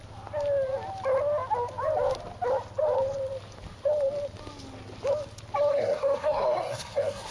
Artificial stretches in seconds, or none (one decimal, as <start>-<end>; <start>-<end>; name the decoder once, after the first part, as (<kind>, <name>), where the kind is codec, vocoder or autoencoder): 5.7-7.3 (codec, SNAC)